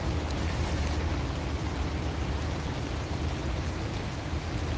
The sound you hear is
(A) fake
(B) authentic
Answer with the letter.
B